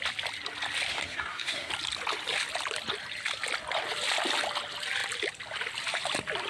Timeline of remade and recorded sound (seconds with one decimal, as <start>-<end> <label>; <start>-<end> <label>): 0.0-0.9 recorded; 0.9-1.7 remade; 1.7-6.5 recorded